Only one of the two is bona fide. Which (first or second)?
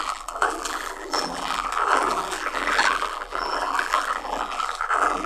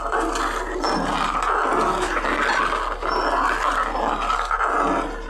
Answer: second